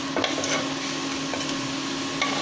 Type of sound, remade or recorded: recorded